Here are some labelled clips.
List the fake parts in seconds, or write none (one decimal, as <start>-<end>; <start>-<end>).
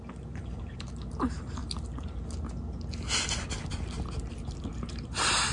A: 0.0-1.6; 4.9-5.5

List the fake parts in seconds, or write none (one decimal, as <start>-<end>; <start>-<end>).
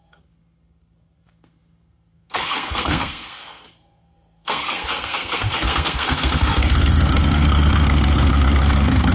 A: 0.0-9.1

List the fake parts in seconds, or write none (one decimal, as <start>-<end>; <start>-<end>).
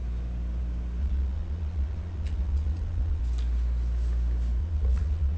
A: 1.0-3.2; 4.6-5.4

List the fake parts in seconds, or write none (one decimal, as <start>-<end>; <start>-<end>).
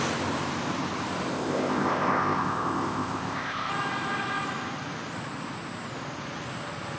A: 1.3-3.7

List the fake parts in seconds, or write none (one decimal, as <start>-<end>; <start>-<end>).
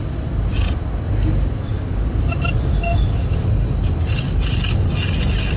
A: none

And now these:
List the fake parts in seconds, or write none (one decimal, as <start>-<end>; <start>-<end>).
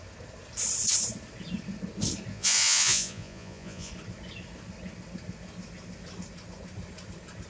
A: 2.3-3.9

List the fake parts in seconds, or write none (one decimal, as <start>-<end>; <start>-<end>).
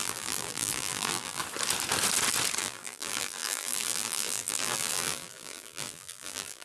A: 0.0-1.4; 2.6-6.6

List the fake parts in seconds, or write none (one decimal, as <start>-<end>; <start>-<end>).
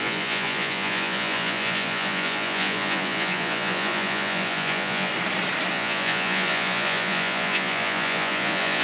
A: 0.0-5.1; 5.7-8.8